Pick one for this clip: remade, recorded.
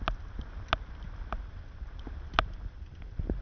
recorded